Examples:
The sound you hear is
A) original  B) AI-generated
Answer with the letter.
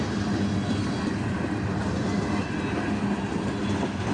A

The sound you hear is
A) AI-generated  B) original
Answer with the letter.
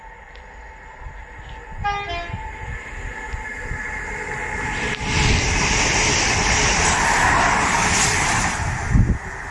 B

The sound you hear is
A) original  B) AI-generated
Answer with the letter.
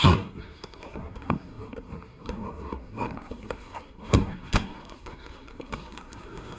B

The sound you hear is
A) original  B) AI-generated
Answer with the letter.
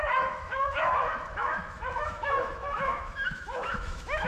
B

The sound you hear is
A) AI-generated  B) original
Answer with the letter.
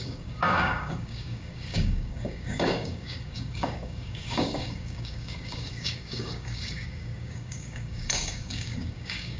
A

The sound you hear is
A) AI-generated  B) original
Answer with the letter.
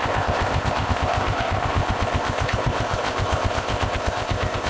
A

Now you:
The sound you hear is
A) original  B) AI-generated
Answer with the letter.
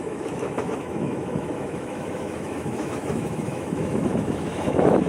B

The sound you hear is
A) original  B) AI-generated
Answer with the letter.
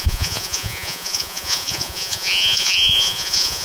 B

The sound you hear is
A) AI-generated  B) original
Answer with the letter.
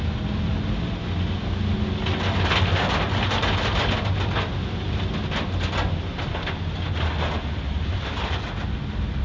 B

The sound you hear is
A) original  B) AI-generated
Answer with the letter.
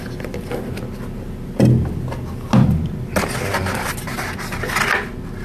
A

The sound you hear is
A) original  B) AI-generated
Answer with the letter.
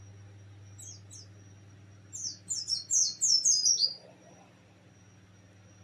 A